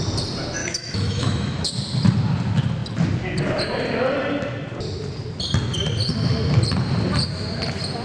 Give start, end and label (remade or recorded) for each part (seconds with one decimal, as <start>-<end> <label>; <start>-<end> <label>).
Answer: 0.0-0.6 recorded; 0.6-1.7 remade; 1.7-8.0 recorded